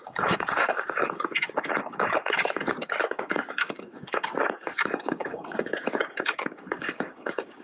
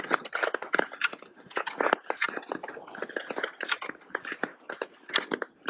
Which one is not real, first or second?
first